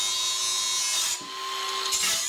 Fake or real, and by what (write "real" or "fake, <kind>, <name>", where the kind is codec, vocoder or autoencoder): real